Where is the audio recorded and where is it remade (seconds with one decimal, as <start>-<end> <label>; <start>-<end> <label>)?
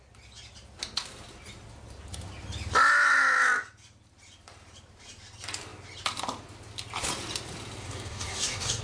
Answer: 0.0-7.8 recorded; 7.8-8.8 remade